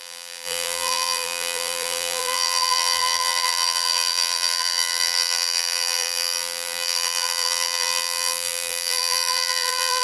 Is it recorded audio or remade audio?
remade